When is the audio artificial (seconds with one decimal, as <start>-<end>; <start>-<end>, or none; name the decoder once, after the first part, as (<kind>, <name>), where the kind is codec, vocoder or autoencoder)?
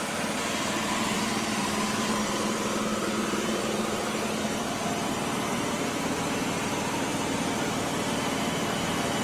0.0-9.2 (vocoder, BigVGAN v2)